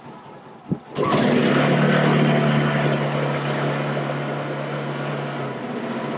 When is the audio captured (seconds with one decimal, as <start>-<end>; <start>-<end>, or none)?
0.0-6.2